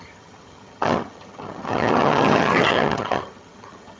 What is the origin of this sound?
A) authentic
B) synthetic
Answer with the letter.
B